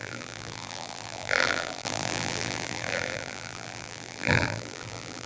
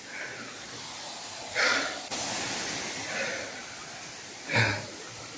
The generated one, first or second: first